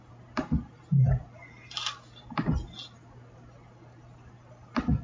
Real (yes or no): yes